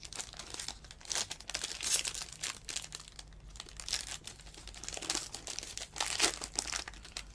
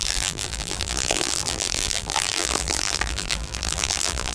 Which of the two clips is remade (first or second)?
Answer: second